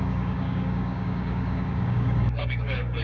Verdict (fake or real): fake